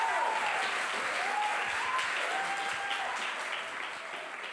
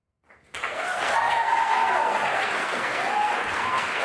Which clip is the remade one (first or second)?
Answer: second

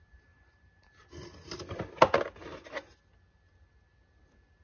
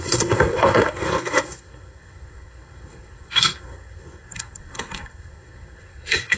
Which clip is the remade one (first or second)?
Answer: second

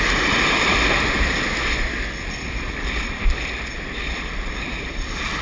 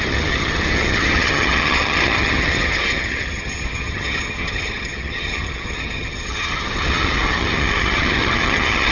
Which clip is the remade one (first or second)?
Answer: second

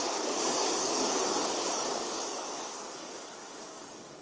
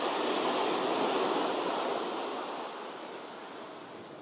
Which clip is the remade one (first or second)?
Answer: first